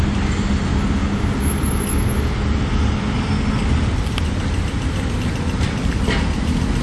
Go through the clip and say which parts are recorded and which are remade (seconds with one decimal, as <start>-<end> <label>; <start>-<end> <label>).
0.0-6.8 recorded